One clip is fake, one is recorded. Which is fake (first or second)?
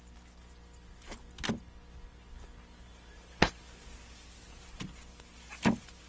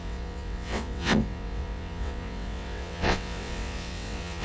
second